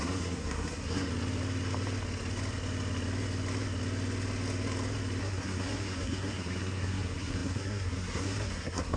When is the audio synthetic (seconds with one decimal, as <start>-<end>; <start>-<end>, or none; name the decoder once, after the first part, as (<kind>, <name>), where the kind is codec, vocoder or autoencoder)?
0.0-1.1 (codec, SNAC); 5.2-9.0